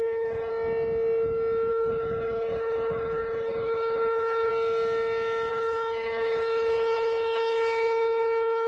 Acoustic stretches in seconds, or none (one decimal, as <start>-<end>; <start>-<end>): 0.5-1.7; 4.5-5.5